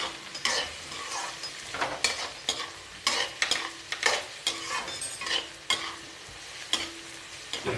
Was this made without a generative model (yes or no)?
yes